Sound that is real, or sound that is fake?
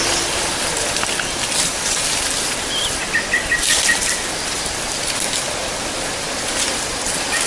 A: real